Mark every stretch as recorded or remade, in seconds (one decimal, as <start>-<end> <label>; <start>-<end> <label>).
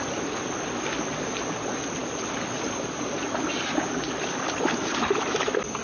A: 0.0-5.8 recorded